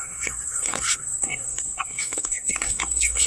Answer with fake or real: fake